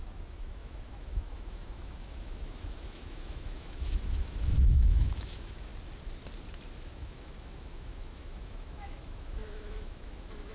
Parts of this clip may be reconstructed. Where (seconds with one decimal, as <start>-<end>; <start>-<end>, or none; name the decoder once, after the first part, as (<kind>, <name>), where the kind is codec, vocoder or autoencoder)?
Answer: 0.0-5.7 (autoencoder, DAC-VAE); 6.8-10.5